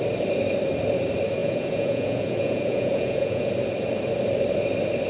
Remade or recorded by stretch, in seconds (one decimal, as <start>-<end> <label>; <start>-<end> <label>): 0.0-1.4 recorded; 1.4-3.5 remade; 3.5-5.1 recorded